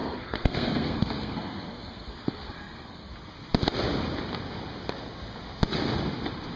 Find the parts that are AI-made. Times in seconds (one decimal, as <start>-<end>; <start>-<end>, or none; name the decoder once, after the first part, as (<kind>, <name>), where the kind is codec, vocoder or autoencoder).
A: 0.0-3.1 (codec, SNAC)